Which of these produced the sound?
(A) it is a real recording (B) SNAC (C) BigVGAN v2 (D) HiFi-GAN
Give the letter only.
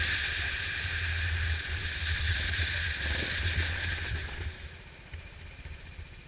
A